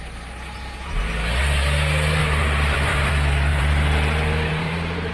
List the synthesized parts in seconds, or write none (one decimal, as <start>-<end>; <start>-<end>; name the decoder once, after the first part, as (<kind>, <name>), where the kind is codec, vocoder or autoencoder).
2.2-3.1 (vocoder, BigVGAN v2); 3.5-5.1